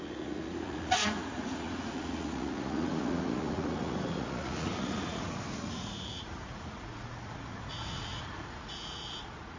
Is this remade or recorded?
remade